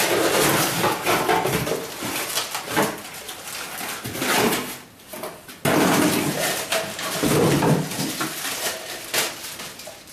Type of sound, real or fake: real